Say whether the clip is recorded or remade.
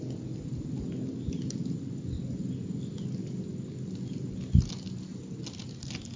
recorded